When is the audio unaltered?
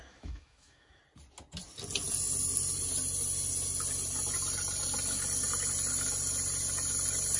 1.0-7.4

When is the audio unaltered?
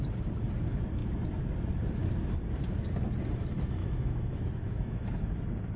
0.0-3.8; 5.3-5.8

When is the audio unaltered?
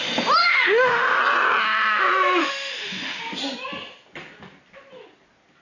0.0-0.4; 1.2-2.4; 3.2-5.6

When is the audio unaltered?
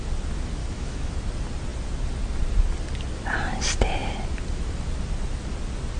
0.0-0.6; 1.2-6.0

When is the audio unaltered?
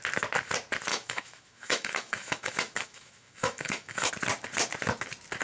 0.0-0.9; 4.1-5.4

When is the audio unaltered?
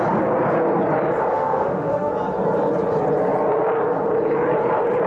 0.0-1.3; 2.1-5.1